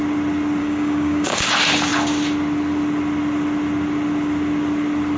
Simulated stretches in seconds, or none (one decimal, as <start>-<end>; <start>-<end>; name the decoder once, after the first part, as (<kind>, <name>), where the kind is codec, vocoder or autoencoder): 0.6-1.4 (codec, DAC)